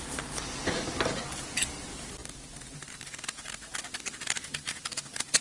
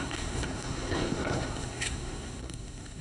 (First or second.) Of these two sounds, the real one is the first